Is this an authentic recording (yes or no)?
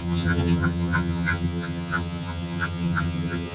no